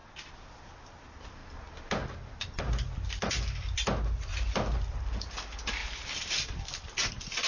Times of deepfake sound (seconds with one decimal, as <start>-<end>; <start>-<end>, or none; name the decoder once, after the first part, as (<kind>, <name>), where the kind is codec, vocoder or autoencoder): 4.3-5.0 (vocoder, BigVGAN v2); 5.8-6.3